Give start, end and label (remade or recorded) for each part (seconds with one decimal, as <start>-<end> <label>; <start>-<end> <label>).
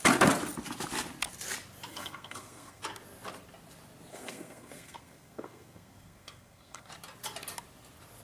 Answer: 0.0-1.9 recorded; 1.9-2.8 remade; 2.8-4.1 recorded; 4.1-6.9 remade; 6.9-8.2 recorded